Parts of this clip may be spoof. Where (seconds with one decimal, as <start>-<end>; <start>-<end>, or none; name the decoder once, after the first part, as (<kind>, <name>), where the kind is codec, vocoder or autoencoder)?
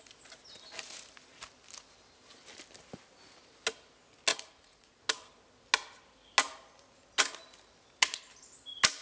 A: 4.3-5.0 (vocoder, Vocos)